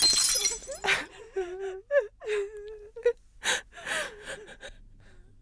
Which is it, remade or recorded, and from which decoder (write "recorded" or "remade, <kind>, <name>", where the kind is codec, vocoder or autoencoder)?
recorded